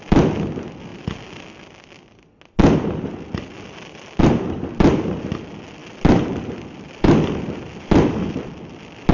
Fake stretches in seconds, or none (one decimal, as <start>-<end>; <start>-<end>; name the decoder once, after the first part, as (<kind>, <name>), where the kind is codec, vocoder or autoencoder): 5.8-8.5 (vocoder, BigVGAN v2)